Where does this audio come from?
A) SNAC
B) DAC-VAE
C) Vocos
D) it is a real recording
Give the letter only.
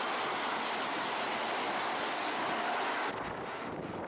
D